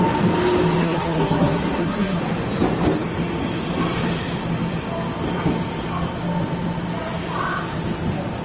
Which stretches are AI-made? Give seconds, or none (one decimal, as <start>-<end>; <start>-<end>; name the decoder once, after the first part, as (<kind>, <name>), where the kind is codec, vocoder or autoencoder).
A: 0.8-2.2 (codec, SNAC)